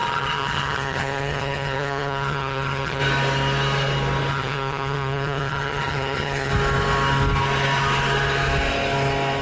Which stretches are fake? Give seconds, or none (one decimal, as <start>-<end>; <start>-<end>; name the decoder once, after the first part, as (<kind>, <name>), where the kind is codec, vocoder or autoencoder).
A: 0.0-3.0 (vocoder, HiFi-GAN); 4.3-6.5